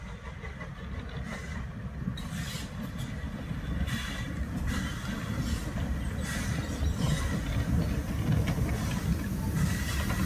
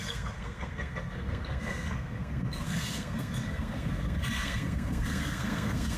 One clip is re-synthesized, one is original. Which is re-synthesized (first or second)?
second